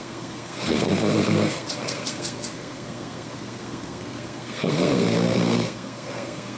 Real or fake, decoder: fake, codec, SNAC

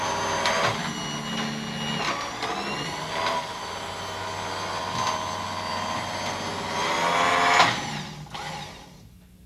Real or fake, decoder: real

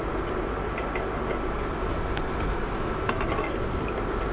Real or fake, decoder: real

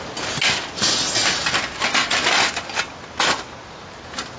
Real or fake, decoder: real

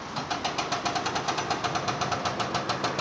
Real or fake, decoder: real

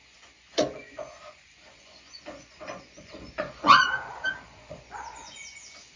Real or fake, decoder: fake, vocoder, Vocos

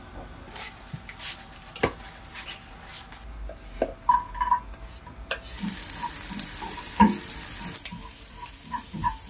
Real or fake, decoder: real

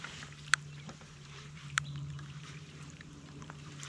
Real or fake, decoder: fake, vocoder, BigVGAN v2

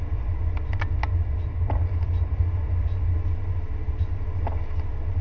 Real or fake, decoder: real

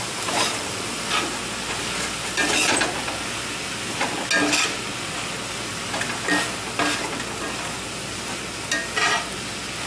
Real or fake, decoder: real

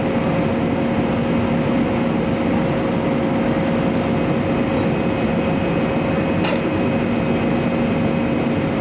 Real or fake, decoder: real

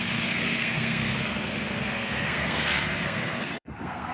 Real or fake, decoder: fake, codec, SNAC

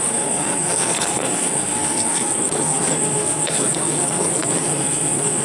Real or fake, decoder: fake, codec, SNAC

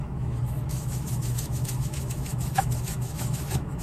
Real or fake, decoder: fake, autoencoder, DAC-VAE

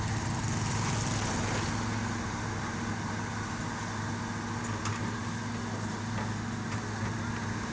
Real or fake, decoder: real